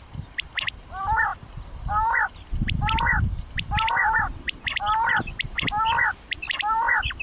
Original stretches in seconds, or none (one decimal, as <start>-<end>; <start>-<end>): 0.0-7.2